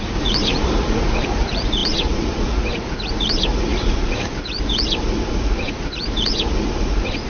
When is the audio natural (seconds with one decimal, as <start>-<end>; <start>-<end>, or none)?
none